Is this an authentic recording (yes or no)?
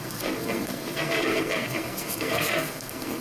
no